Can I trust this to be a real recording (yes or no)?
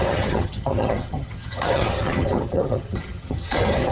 no